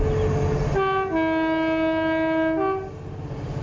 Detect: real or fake real